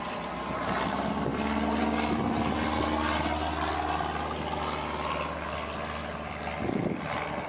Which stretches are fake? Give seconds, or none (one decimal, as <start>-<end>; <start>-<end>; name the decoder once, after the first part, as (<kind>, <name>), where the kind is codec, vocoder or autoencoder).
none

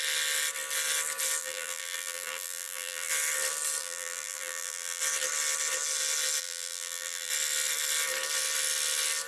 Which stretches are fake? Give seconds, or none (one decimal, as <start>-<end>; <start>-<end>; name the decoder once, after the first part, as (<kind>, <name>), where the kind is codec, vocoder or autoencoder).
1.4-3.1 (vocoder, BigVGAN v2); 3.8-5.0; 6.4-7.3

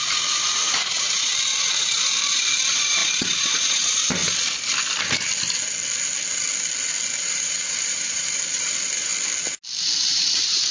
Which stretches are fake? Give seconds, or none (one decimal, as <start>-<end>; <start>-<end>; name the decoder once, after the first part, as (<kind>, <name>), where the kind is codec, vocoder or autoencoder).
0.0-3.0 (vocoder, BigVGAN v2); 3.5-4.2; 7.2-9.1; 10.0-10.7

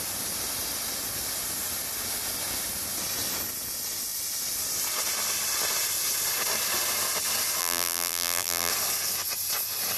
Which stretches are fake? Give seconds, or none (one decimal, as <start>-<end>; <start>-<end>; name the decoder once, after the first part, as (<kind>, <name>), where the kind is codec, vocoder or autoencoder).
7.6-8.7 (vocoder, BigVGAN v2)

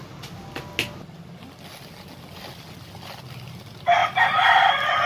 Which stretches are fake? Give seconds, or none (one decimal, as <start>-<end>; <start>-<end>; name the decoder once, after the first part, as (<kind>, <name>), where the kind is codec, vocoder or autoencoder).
4.0-5.1 (vocoder, BigVGAN v2)

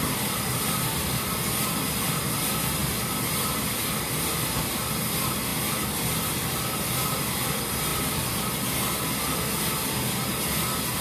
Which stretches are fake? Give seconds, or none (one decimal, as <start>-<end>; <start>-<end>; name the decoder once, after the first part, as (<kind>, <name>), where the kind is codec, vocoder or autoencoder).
7.9-9.2 (vocoder, BigVGAN v2)

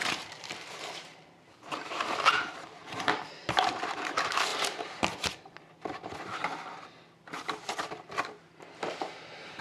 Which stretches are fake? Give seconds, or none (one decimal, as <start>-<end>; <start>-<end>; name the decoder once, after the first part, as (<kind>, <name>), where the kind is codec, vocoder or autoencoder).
0.0-4.5 (vocoder, BigVGAN v2); 7.6-9.6